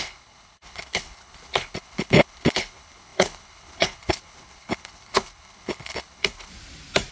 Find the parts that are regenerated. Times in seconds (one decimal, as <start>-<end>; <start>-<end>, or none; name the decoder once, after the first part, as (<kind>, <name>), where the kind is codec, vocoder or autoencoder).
0.0-6.5 (codec, HILCodec)